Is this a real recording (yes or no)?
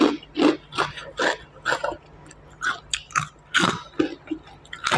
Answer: yes